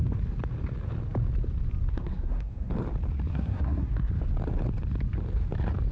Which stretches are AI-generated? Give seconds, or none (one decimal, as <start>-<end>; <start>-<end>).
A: 1.9-2.7; 3.3-4.1

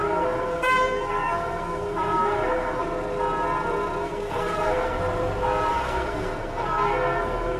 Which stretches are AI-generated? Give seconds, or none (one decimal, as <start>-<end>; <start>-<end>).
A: 0.0-2.8; 4.0-5.0; 5.7-7.6